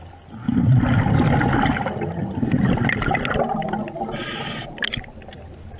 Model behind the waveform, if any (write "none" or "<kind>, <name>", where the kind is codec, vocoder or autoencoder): none